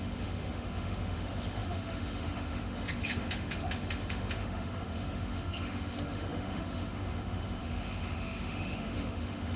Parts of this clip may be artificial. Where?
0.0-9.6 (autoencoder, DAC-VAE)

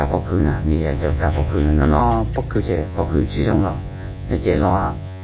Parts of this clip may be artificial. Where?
0.0-2.0 (vocoder, Vocos); 2.6-5.2